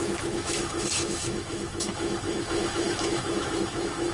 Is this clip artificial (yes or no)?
yes